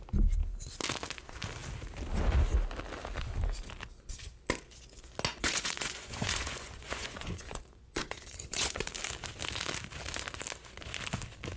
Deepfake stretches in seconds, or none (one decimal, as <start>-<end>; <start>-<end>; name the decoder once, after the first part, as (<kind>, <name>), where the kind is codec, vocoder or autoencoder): 5.3-8.8 (vocoder, Vocos)